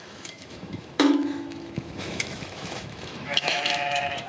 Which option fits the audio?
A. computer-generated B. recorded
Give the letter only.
A